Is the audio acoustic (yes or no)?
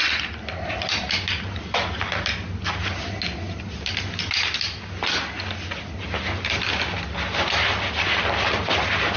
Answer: yes